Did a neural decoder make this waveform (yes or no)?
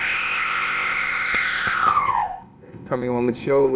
yes